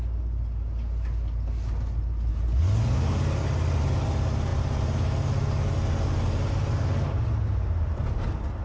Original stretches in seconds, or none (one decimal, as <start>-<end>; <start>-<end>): 0.0-8.6